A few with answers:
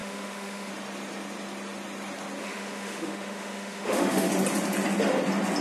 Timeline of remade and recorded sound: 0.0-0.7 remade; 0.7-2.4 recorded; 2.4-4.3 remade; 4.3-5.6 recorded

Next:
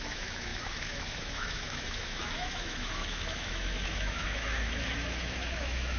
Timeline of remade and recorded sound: 0.0-6.0 remade

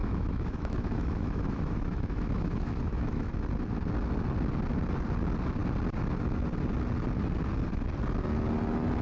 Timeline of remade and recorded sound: 0.0-3.3 remade; 3.3-9.0 recorded

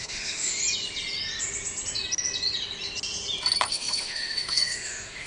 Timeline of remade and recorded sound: 0.0-0.6 remade; 0.6-3.7 recorded; 3.7-5.3 remade